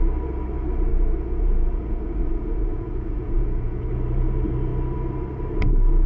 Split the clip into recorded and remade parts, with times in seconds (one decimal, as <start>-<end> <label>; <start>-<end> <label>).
0.0-0.9 recorded; 0.9-3.9 remade; 3.9-6.1 recorded